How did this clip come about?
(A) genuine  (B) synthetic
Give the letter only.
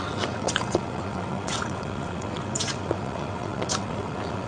B